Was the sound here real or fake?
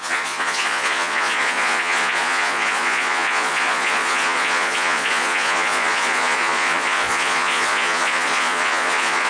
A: fake